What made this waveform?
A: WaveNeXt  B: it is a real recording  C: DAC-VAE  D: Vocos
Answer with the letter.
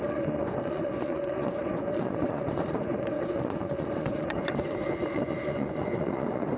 D